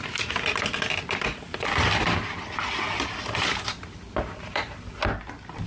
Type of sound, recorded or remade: recorded